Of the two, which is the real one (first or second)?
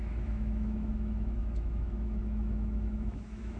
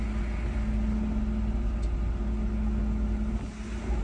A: second